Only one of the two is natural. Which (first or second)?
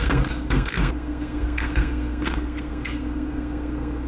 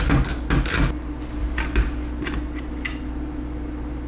second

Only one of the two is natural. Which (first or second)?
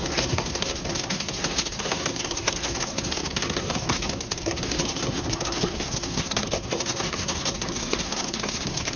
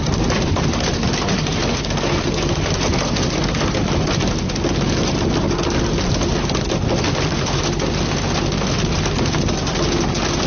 second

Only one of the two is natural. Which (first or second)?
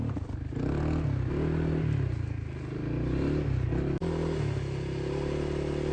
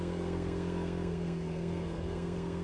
first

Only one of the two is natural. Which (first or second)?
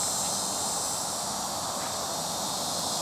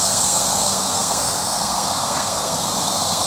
first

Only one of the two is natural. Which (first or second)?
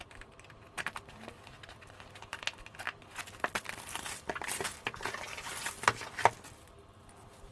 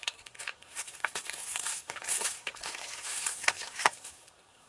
first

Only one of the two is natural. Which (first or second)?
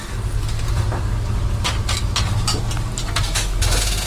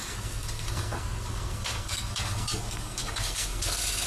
first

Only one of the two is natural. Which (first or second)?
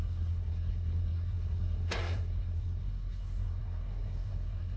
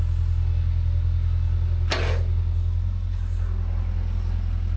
second